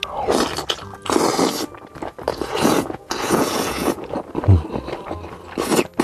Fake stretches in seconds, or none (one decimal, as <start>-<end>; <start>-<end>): 2.3-4.2